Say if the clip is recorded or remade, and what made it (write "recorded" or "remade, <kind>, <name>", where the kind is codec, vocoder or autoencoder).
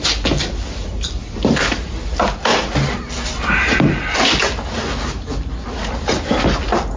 recorded